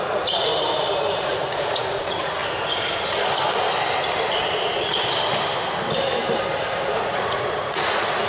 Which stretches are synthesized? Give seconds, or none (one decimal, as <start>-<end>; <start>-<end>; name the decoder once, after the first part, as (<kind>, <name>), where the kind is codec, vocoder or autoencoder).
0.0-0.5 (vocoder, Vocos); 1.2-2.4; 6.9-8.3